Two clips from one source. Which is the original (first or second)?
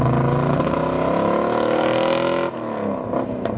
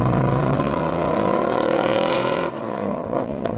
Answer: first